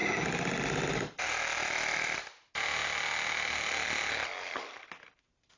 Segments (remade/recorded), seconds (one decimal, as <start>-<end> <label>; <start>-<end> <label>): 0.0-5.6 recorded